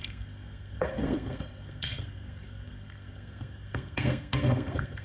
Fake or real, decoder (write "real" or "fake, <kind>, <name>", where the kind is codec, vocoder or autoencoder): fake, codec, SNAC